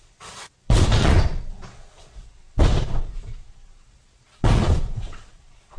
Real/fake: fake